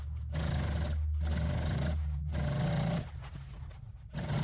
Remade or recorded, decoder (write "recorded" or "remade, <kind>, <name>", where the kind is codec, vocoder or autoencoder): recorded